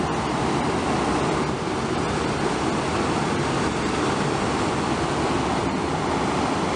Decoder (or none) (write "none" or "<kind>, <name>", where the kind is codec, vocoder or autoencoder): none